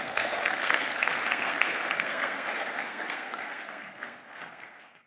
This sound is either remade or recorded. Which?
remade